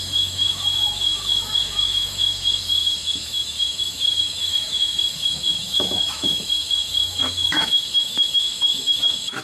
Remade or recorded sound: remade